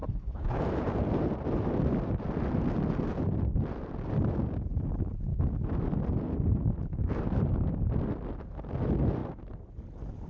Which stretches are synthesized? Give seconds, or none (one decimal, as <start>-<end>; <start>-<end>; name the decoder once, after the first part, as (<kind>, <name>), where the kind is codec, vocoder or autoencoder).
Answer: 0.0-0.6 (codec, HILCodec)

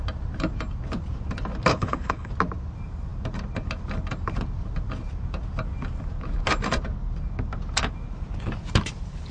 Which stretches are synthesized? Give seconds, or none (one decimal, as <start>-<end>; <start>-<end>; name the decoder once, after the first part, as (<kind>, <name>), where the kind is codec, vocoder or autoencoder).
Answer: 1.7-2.3 (codec, HILCodec)

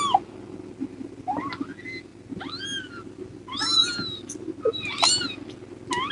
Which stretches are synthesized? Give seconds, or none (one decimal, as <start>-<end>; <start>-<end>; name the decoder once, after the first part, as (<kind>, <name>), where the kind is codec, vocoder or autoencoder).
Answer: none

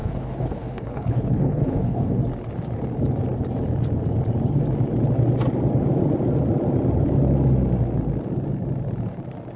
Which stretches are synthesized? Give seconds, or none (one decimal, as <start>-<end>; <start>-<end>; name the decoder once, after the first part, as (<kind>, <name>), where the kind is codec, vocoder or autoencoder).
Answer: 0.0-2.2 (codec, HILCodec)